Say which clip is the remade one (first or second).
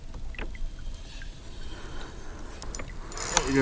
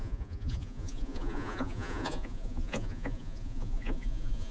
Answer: second